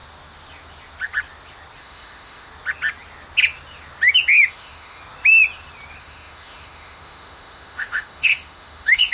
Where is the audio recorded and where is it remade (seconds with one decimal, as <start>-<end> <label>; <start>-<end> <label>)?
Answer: 0.0-1.8 recorded; 1.8-2.5 remade; 2.5-4.5 recorded; 4.5-5.0 remade; 5.0-6.0 recorded; 6.0-9.1 remade